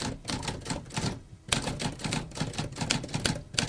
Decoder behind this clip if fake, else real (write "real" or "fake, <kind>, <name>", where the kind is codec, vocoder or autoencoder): real